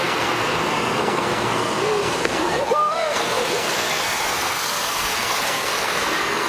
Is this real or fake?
fake